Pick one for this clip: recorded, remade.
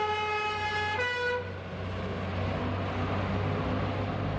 recorded